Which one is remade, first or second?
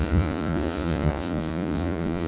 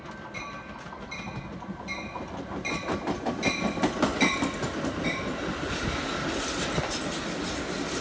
first